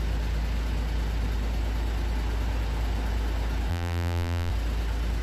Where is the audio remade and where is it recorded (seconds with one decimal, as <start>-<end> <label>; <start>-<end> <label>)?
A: 0.0-3.7 recorded; 3.7-4.5 remade; 4.5-5.2 recorded